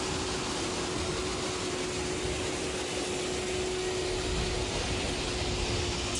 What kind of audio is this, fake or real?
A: real